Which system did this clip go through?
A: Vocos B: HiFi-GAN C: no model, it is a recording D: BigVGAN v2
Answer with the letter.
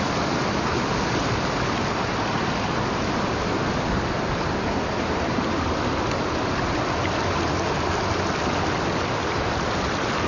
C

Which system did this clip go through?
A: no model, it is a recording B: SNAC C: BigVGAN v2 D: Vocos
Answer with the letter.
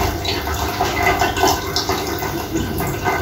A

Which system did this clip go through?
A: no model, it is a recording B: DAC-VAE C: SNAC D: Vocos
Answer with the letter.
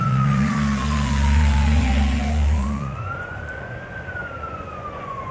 D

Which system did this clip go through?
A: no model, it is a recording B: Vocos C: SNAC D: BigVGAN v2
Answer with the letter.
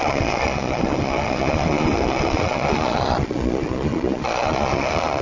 B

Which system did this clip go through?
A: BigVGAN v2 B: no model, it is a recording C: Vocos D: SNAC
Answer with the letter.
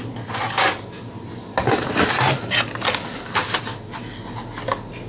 B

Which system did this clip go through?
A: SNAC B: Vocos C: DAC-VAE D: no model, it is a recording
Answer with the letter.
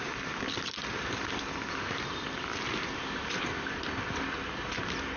D